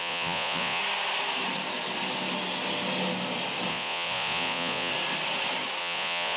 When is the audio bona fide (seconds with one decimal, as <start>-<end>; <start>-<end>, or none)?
0.8-3.7; 4.9-5.8